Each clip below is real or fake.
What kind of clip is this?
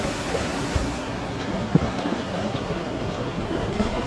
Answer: fake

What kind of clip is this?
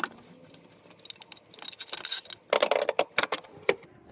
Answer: real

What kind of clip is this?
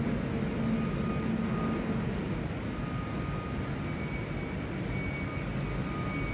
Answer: real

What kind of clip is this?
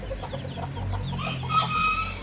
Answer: real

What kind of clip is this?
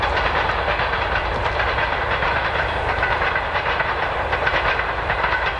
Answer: real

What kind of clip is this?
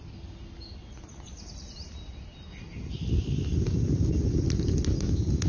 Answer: real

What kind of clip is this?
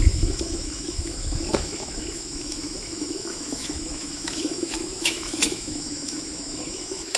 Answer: fake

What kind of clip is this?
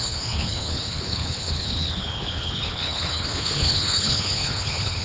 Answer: fake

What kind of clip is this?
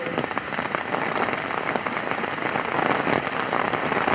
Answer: real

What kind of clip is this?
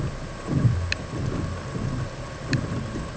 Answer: real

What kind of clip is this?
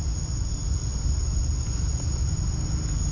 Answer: real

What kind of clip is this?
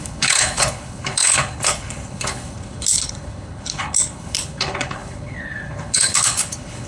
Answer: fake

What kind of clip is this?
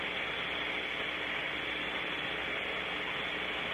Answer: real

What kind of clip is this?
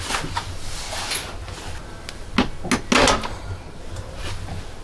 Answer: real